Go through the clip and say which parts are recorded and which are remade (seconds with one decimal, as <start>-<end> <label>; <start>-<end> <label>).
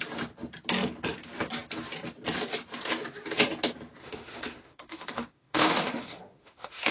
0.0-4.0 recorded; 4.0-6.9 remade